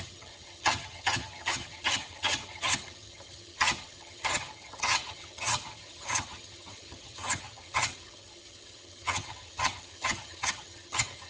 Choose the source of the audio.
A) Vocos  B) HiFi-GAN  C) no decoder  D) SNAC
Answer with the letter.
B